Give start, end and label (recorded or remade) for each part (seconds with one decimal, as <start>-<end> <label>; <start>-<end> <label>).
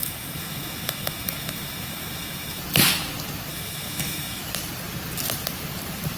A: 0.0-2.6 remade; 2.6-3.5 recorded; 3.5-4.4 remade; 4.4-6.2 recorded